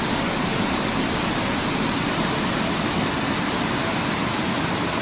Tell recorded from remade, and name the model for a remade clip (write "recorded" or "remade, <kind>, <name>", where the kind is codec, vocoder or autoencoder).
recorded